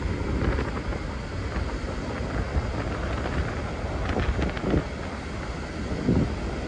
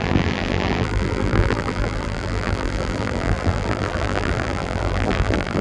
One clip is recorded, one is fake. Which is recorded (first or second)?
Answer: first